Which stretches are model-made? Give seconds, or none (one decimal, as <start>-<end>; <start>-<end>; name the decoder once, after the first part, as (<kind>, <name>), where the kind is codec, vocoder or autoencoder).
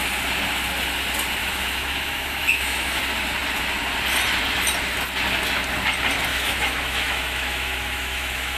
1.4-3.0 (autoencoder, DAC-VAE); 6.3-8.6